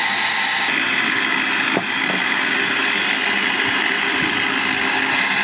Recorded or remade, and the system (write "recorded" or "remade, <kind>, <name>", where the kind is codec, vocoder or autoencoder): recorded